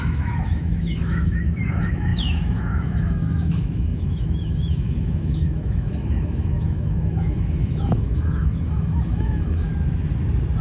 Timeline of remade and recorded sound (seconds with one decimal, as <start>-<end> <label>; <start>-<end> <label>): 0.0-9.7 remade; 9.7-10.6 recorded